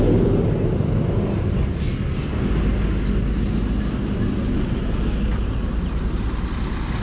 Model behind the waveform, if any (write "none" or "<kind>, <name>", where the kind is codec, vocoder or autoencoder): none